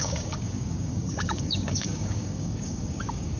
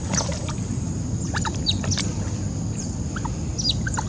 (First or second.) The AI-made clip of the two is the first